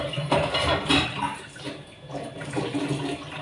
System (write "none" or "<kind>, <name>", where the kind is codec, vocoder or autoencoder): none